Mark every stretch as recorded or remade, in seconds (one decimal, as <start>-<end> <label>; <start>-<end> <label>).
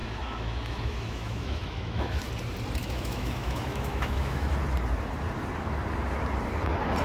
0.0-2.2 remade; 2.2-2.8 recorded; 2.8-4.5 remade; 4.5-7.0 recorded